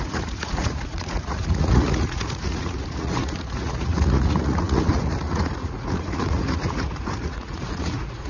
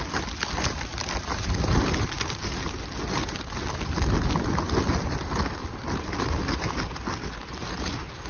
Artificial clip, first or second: first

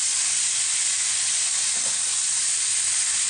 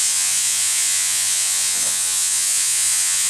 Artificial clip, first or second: second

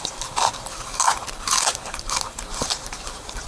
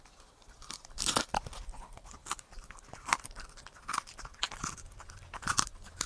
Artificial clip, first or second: first